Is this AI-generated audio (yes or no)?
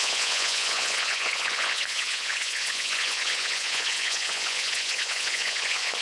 yes